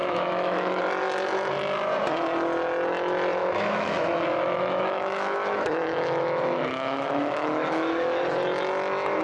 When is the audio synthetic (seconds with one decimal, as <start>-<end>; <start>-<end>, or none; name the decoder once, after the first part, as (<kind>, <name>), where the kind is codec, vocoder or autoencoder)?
0.0-0.8 (autoencoder, DAC-VAE); 3.4-8.2